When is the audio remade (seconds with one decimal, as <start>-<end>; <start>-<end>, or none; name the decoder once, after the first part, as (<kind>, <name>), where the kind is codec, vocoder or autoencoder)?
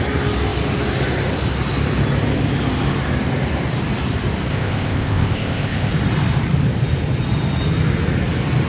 4.5-5.9 (codec, ZipCodec)